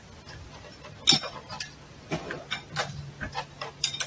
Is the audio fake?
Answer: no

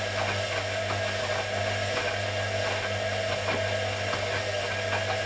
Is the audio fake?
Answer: no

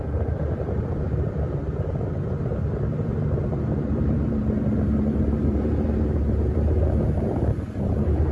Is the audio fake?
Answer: yes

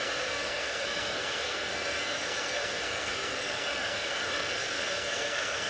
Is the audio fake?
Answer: yes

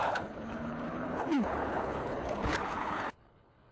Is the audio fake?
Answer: yes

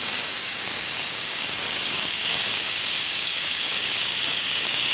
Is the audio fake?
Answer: yes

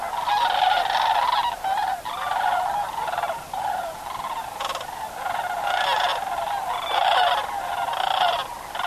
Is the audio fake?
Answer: no